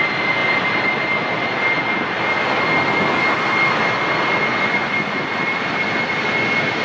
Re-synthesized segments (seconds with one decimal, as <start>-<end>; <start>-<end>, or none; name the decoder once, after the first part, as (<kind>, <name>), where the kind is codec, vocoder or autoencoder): 4.5-5.3 (vocoder, Vocos)